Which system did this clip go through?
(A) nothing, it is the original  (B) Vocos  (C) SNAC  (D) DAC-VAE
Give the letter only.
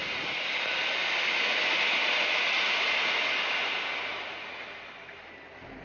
A